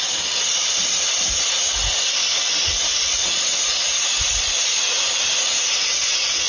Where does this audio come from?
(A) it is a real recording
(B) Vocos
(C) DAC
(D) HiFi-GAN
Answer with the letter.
A